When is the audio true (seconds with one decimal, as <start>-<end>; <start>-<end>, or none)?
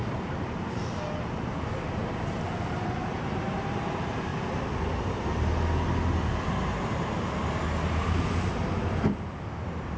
0.8-1.4; 4.3-9.6